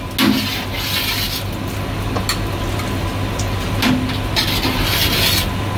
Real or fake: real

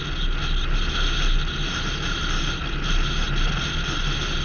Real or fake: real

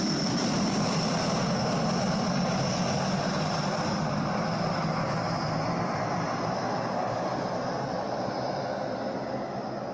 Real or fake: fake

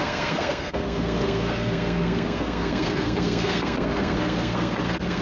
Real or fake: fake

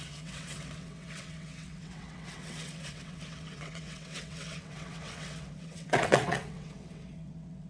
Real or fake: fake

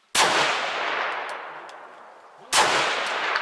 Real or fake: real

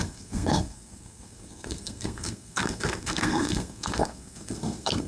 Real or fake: fake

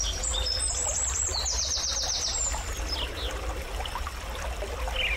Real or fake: real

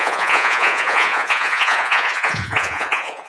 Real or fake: fake